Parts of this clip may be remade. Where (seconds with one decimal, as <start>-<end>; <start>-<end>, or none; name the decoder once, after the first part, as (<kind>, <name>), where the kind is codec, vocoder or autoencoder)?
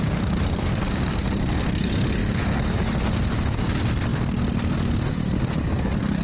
none